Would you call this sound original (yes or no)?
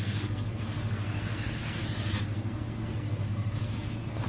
no